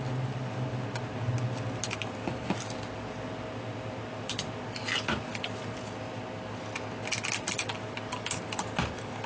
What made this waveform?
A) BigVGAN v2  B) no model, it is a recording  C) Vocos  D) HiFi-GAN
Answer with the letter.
B